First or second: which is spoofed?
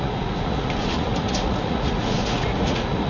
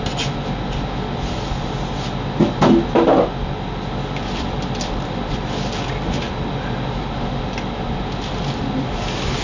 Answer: first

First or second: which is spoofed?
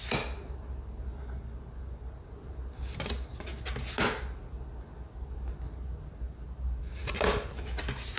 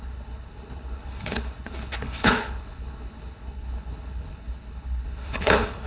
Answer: second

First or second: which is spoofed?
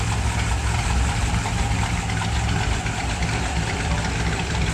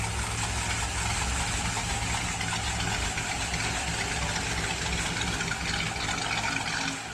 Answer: first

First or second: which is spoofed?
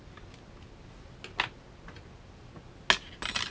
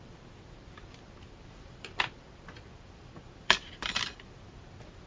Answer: second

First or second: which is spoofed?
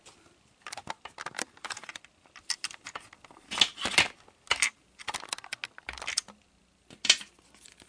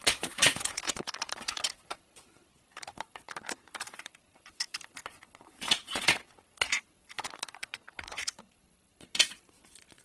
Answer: second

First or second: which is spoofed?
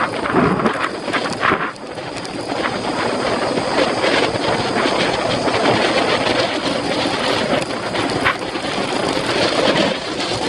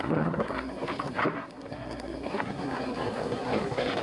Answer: second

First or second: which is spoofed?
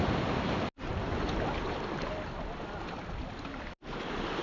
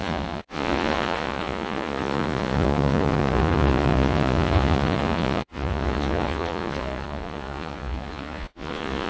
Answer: second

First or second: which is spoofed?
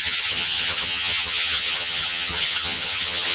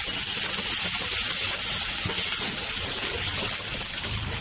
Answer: first